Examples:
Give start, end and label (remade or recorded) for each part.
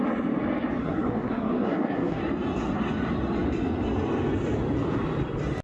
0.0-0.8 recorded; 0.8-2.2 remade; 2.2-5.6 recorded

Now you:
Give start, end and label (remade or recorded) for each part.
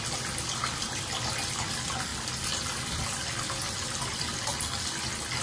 0.0-5.4 recorded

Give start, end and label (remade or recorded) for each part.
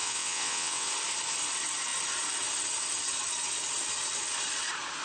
0.0-0.9 remade; 0.9-5.0 recorded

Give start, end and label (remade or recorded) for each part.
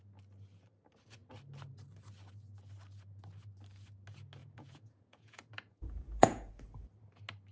0.0-4.4 recorded; 4.4-6.5 remade; 6.5-7.5 recorded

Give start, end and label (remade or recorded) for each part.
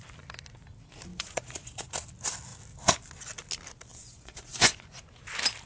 0.0-1.1 recorded; 1.1-1.9 remade; 1.9-3.9 recorded; 3.9-5.2 remade; 5.2-5.7 recorded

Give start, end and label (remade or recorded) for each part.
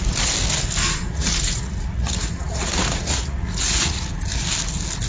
0.0-1.0 recorded; 1.0-4.1 remade; 4.1-5.1 recorded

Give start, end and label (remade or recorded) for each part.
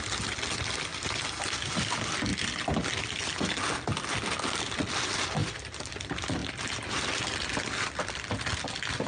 0.0-0.9 recorded; 0.9-1.9 remade; 1.9-2.3 recorded; 2.3-3.3 remade; 3.3-5.4 recorded; 5.4-6.0 remade; 6.0-6.4 recorded; 6.4-8.0 remade; 8.0-9.1 recorded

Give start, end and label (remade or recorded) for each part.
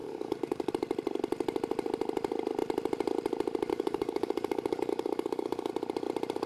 0.0-0.7 remade; 0.7-3.7 recorded; 3.7-5.7 remade; 5.7-6.5 recorded